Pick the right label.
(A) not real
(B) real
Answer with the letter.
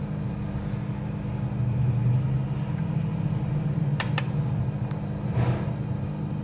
B